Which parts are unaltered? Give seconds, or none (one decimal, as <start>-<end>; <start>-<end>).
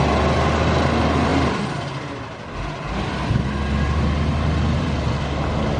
0.0-5.8